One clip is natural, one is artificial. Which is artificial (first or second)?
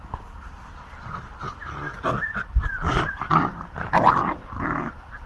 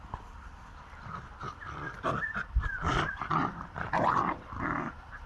second